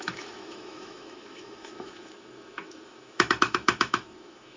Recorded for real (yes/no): no